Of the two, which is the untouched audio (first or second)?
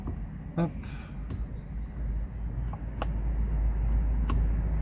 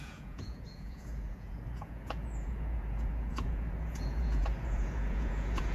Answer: first